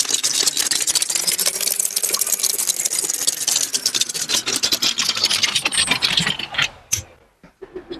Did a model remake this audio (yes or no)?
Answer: no